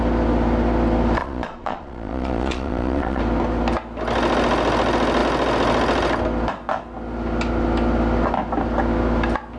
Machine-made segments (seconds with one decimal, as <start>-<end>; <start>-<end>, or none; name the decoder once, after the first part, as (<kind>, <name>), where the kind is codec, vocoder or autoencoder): 1.2-3.2 (vocoder, Vocos)